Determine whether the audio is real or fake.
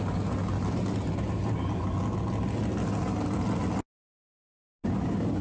real